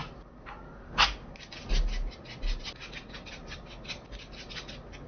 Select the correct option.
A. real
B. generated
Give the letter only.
A